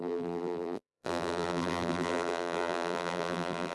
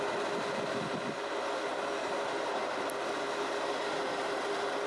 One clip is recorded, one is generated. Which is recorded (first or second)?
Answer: second